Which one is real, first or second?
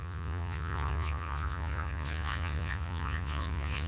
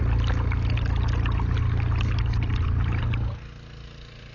second